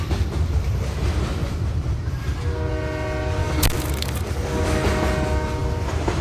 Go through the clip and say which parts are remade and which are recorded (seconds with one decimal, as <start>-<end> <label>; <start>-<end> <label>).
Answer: 0.0-3.4 recorded; 3.4-4.9 remade; 4.9-6.2 recorded

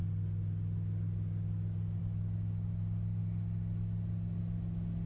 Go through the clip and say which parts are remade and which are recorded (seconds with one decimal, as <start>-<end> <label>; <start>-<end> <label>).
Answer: 0.0-5.1 recorded

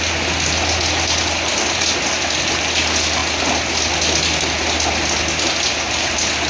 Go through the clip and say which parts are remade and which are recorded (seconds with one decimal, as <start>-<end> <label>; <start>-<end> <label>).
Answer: 0.0-6.5 recorded

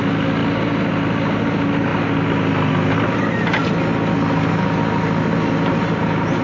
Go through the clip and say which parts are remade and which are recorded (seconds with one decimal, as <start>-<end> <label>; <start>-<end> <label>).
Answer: 0.0-6.4 recorded